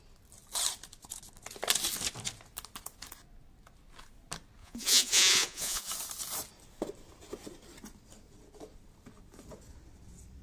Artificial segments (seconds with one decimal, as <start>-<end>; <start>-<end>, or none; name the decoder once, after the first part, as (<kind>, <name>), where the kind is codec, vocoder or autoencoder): 4.6-5.9 (vocoder, Vocos)

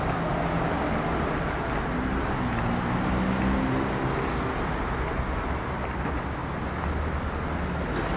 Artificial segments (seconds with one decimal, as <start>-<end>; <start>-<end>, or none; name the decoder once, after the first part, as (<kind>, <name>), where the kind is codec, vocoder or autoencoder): none

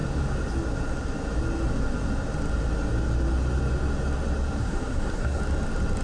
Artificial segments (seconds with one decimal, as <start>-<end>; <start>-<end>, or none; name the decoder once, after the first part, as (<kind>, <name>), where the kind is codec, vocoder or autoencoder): 4.6-5.4 (codec, SNAC)